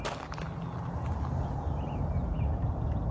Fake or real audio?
real